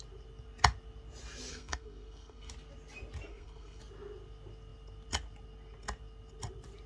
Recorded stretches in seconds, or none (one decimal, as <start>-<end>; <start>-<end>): 0.0-1.5; 2.5-3.3; 3.8-6.9